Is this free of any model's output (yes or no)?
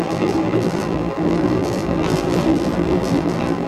no